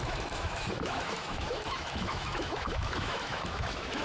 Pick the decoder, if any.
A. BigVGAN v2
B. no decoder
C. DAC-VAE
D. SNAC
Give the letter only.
C